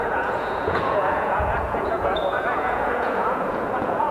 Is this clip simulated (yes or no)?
yes